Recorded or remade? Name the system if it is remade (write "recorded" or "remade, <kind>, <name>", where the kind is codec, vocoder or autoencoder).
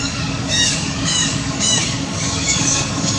remade, codec, DAC